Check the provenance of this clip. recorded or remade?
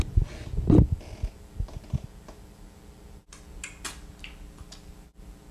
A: recorded